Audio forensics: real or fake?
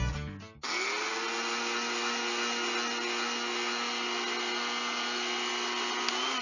real